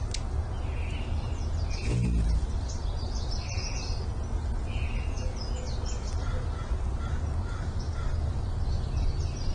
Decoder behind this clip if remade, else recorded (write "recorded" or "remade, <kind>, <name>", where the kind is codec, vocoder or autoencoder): recorded